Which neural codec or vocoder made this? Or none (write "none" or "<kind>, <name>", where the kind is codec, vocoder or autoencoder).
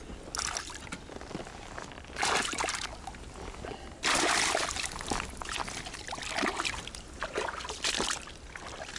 none